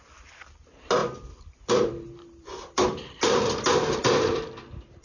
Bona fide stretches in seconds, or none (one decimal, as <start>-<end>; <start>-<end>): 0.0-1.0; 4.0-5.0